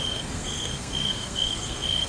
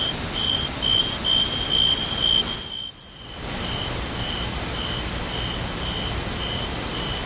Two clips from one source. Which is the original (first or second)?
second